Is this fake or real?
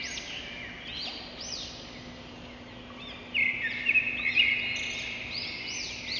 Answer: real